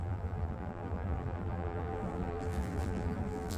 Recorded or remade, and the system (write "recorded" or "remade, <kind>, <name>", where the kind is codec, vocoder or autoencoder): remade, vocoder, BigVGAN v2